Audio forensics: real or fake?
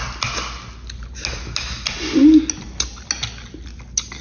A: real